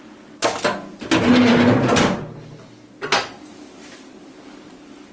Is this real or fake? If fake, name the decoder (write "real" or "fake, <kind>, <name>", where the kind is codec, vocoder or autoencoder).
real